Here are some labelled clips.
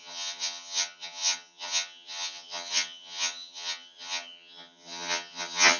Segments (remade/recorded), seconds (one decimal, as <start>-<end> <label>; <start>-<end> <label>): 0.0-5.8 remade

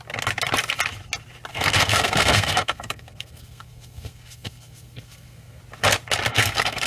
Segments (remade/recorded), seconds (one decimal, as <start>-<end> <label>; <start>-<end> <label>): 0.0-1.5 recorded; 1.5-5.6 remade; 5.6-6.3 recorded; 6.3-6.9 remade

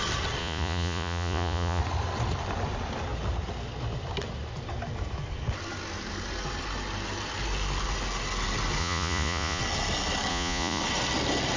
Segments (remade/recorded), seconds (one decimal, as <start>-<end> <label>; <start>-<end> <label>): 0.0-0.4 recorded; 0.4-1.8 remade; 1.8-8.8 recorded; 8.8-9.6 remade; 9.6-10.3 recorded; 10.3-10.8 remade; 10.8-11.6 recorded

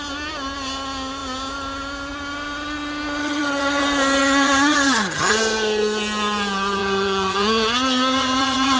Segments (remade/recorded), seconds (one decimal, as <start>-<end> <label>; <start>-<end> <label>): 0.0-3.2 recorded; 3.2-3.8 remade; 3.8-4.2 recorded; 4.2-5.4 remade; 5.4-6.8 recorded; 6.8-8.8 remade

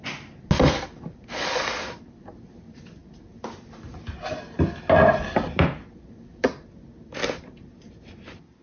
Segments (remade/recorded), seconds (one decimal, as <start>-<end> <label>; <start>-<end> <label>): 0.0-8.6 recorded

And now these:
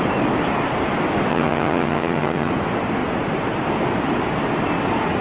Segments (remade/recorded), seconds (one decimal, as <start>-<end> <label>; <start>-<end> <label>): 0.0-1.3 recorded; 1.3-2.5 remade; 2.5-5.2 recorded

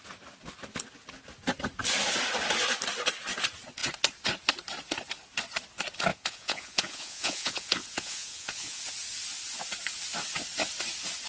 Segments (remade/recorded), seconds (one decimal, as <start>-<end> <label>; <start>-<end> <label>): 0.0-6.1 recorded; 6.1-8.8 remade; 8.8-11.3 recorded